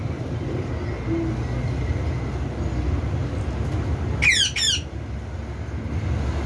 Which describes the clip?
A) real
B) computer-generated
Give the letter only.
A